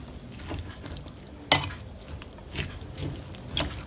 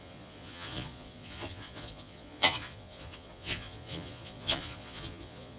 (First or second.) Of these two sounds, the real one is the first